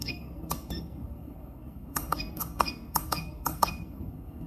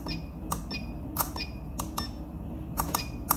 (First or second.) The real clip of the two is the second